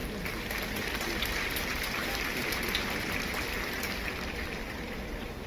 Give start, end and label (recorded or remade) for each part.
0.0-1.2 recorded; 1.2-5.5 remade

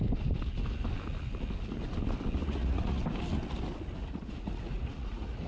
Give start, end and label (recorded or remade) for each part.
0.0-2.4 recorded; 2.4-3.0 remade; 3.0-4.0 recorded; 4.0-5.5 remade

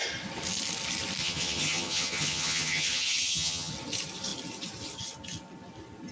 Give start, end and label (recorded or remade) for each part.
0.0-1.2 recorded; 1.2-3.7 remade; 3.7-6.1 recorded

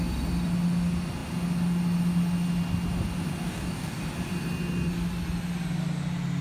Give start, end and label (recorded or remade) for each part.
0.0-3.4 recorded; 3.4-4.0 remade; 4.0-6.4 recorded

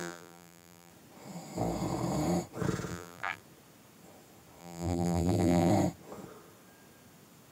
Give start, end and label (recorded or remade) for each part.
0.0-0.9 remade; 0.9-2.9 recorded; 2.9-3.4 remade; 3.4-4.6 recorded; 4.6-5.7 remade; 5.7-7.5 recorded

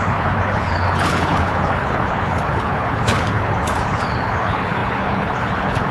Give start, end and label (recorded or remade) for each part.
0.0-5.9 remade

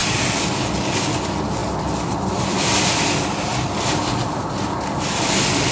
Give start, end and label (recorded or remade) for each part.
0.0-5.7 recorded